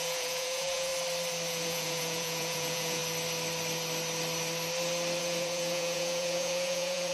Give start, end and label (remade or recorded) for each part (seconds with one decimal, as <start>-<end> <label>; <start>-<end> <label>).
0.0-0.9 remade; 0.9-1.5 recorded; 1.5-3.0 remade; 3.0-5.2 recorded; 5.2-7.1 remade